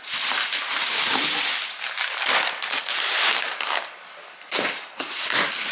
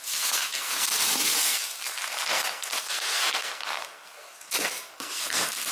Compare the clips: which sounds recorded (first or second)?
first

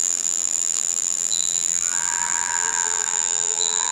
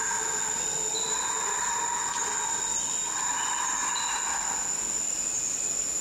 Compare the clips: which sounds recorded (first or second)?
second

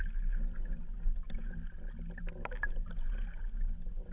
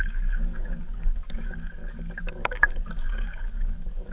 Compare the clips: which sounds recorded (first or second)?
first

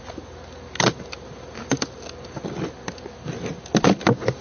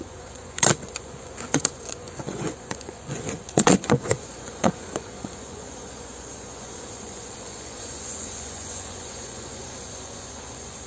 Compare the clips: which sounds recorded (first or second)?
first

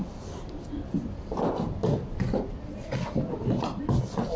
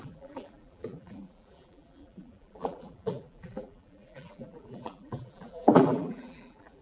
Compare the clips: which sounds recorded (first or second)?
first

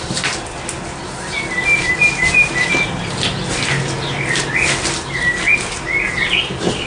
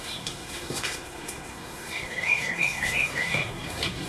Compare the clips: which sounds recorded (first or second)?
first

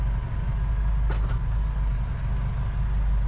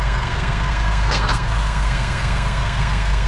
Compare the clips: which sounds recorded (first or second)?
first